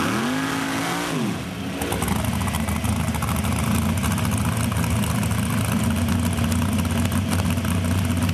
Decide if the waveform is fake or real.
real